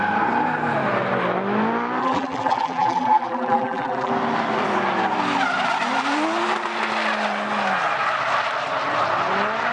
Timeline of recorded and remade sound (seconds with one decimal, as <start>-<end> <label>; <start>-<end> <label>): 0.0-2.0 recorded; 2.0-4.1 remade; 4.1-9.7 recorded